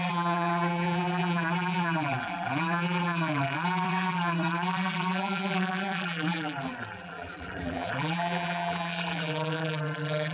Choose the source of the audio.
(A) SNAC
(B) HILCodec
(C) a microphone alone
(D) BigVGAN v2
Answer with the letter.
D